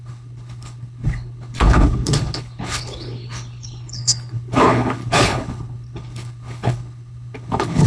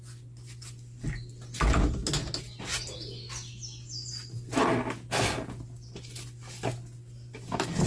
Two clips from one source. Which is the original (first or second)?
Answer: second